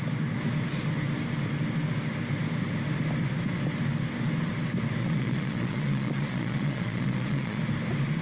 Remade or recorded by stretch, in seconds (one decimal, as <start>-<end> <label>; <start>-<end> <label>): 0.0-5.0 recorded; 5.0-7.6 remade; 7.6-8.2 recorded